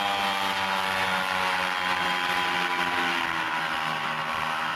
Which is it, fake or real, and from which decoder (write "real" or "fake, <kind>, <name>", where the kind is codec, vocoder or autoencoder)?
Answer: real